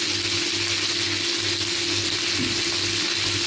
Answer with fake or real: real